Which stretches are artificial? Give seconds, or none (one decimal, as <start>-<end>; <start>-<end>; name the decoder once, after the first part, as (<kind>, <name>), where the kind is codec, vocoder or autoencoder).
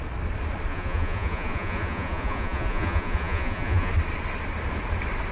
0.7-3.9 (vocoder, Vocos)